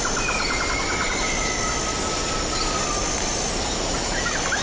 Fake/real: real